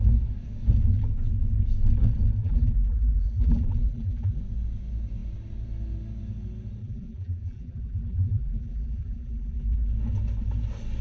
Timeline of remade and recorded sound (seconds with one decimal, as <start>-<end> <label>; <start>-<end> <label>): 0.0-2.4 recorded; 2.4-4.4 remade; 4.4-6.8 recorded; 6.8-9.9 remade; 9.9-11.0 recorded